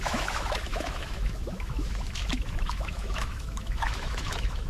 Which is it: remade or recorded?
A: remade